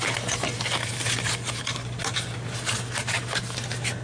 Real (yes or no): yes